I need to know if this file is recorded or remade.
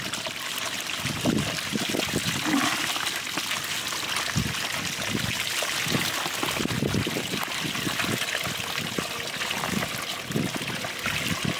recorded